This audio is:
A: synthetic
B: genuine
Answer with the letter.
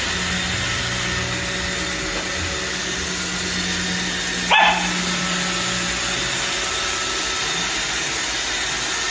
B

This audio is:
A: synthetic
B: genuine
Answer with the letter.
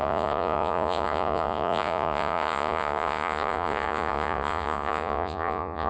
A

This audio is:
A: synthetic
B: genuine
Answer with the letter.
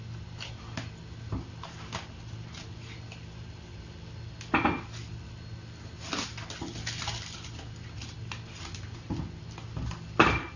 B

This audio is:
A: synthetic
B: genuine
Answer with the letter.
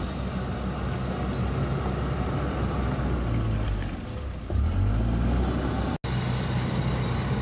B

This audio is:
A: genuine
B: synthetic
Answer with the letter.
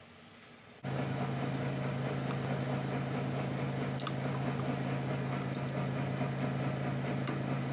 A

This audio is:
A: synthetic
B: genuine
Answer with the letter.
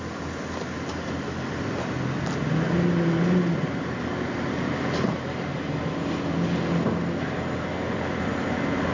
B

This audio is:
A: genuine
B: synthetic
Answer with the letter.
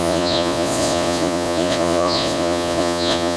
B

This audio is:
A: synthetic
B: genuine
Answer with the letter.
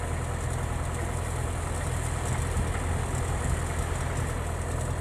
B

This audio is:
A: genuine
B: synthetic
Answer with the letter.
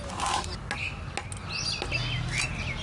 A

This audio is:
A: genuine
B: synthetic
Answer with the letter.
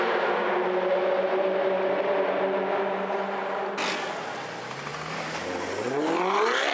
A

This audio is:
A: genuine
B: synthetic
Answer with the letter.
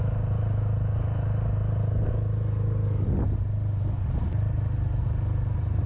A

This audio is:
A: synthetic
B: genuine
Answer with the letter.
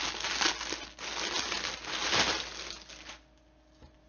B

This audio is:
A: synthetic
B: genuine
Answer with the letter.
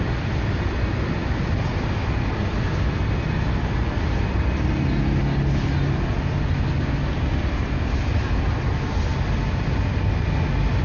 B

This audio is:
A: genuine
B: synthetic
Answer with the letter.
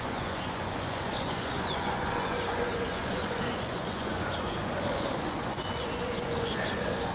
B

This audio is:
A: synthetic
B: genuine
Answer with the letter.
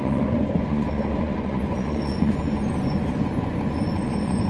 A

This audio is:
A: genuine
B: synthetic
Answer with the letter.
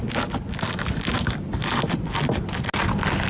A